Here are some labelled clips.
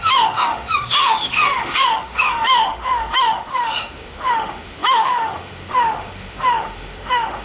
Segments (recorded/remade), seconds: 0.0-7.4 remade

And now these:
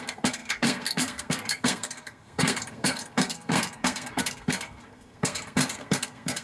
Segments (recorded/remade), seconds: 0.0-6.4 remade

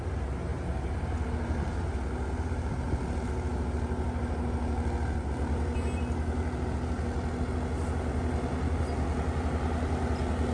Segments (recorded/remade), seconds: 0.0-10.5 recorded

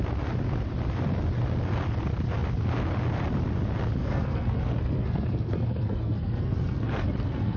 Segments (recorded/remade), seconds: 0.0-4.0 recorded; 4.0-7.6 remade

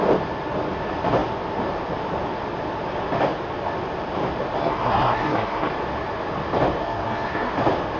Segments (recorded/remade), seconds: 0.0-4.6 recorded; 4.6-5.7 remade; 5.7-6.8 recorded; 6.8-7.5 remade; 7.5-8.0 recorded

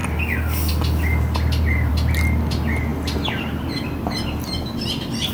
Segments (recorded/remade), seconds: 0.0-2.9 recorded; 2.9-5.3 remade